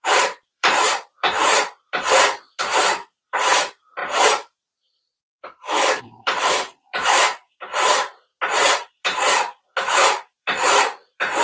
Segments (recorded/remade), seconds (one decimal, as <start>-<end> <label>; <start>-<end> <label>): 0.0-8.3 remade; 8.3-8.9 recorded; 8.9-11.4 remade